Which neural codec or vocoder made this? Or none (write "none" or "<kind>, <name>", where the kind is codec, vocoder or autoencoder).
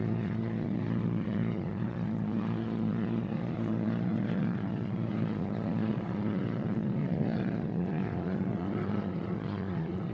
vocoder, Vocos